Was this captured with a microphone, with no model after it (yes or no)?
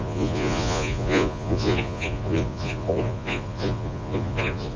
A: no